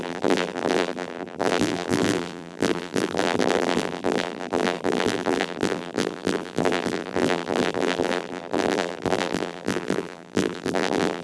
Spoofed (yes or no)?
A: yes